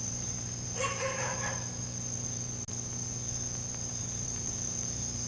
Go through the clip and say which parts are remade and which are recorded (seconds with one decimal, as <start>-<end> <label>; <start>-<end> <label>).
0.0-1.3 remade; 1.3-3.9 recorded; 3.9-5.3 remade